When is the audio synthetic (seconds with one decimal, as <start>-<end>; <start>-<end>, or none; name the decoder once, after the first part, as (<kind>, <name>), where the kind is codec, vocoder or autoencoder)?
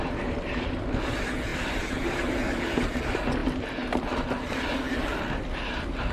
none